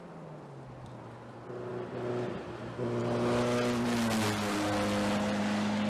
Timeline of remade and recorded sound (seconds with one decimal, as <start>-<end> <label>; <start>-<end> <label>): 0.0-5.9 recorded